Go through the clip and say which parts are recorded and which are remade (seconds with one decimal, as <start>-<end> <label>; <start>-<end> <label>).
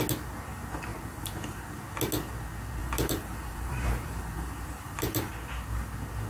0.0-0.9 recorded; 0.9-1.7 remade; 1.7-2.8 recorded; 2.8-5.3 remade; 5.3-6.3 recorded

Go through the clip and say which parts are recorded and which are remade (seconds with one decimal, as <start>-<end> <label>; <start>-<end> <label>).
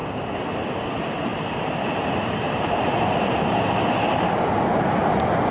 0.0-1.3 recorded; 1.3-4.6 remade; 4.6-5.5 recorded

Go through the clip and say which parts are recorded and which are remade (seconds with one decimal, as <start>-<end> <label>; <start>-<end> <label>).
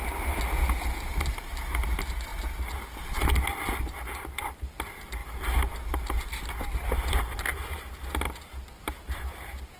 0.0-9.8 recorded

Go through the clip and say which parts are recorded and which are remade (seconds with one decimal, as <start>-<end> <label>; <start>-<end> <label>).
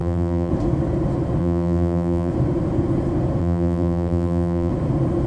0.0-0.5 remade; 0.5-1.4 recorded; 1.4-2.3 remade; 2.3-3.4 recorded; 3.4-4.7 remade; 4.7-5.3 recorded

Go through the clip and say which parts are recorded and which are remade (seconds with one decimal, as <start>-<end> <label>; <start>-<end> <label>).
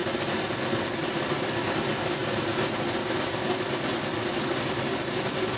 0.0-0.7 recorded; 0.7-2.2 remade; 2.2-3.9 recorded; 3.9-5.6 remade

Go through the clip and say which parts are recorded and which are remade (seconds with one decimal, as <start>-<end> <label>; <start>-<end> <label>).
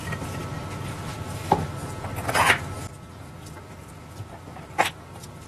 0.0-0.9 recorded; 0.9-1.4 remade; 1.4-3.2 recorded; 3.2-5.5 remade